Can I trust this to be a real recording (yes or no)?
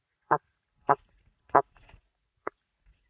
no